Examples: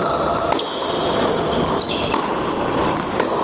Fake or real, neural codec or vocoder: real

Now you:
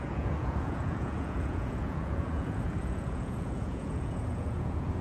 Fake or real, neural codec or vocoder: fake, vocoder, Vocos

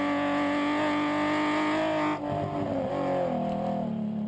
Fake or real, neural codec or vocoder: real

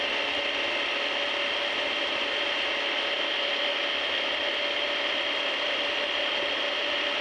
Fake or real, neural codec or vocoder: real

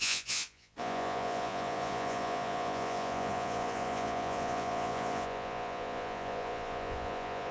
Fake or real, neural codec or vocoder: fake, vocoder, Vocos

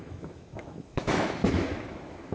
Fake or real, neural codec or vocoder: fake, autoencoder, DAC-VAE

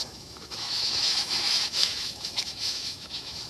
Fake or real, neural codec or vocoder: fake, autoencoder, DAC-VAE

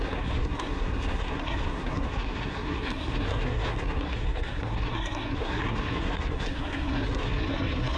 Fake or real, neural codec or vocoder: fake, codec, SNAC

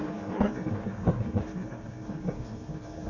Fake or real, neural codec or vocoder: fake, codec, SNAC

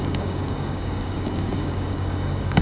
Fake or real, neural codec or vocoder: fake, codec, DAC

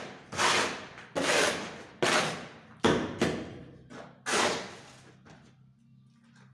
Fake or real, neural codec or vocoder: real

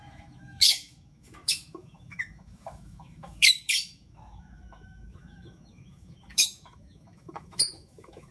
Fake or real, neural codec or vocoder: fake, autoencoder, DAC-VAE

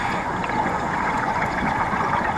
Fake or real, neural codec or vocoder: fake, vocoder, Vocos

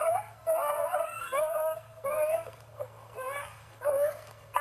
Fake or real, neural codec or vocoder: fake, codec, SNAC